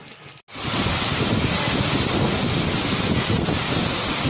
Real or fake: real